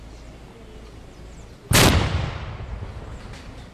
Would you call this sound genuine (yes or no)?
yes